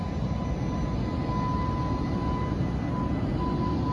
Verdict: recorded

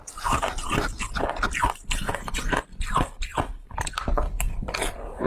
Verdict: recorded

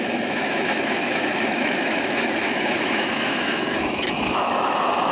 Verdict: remade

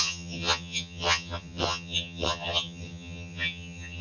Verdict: remade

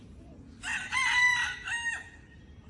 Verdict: recorded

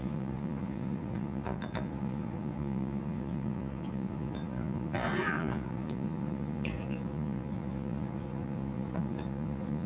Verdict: remade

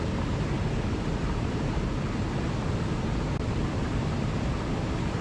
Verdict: recorded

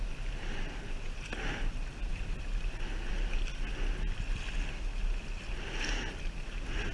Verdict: recorded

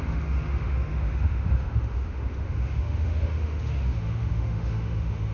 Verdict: remade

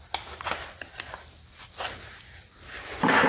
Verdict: recorded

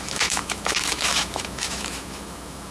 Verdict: remade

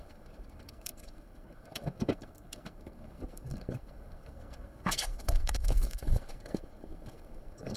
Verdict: remade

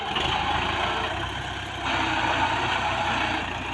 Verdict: recorded